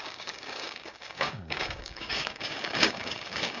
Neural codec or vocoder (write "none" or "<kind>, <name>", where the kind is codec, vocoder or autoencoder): codec, DAC